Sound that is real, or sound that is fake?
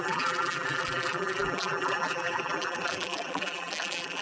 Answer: fake